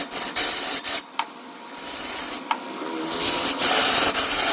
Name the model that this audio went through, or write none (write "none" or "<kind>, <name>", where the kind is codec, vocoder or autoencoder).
vocoder, BigVGAN v2